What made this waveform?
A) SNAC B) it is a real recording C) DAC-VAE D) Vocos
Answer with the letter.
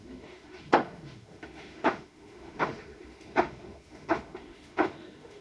C